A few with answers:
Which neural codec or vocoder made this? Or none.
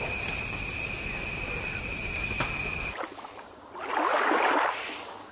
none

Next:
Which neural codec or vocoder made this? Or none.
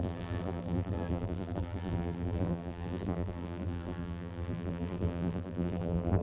vocoder, BigVGAN v2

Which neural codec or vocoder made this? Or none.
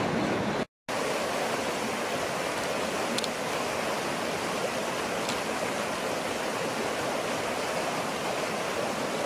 none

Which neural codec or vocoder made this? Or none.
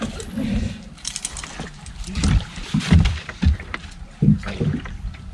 vocoder, BigVGAN v2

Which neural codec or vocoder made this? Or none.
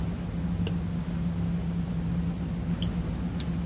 none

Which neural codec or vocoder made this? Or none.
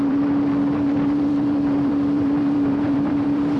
vocoder, BigVGAN v2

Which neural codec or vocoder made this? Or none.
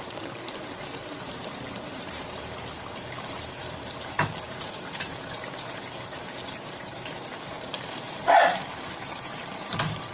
vocoder, BigVGAN v2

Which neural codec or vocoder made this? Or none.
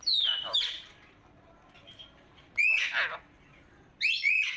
none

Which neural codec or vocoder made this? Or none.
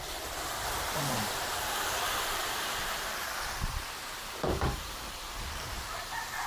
vocoder, BigVGAN v2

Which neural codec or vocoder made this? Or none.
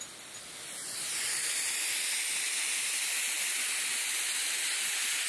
none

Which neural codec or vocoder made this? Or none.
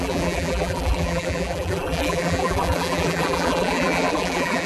vocoder, BigVGAN v2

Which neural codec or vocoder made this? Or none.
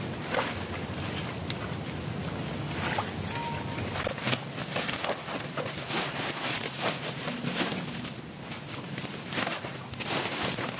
none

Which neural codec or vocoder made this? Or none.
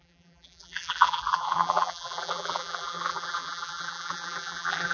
vocoder, BigVGAN v2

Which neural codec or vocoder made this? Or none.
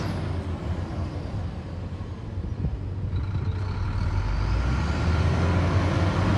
none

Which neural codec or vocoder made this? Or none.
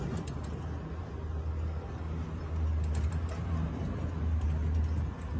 none